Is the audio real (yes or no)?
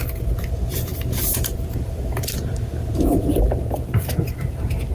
no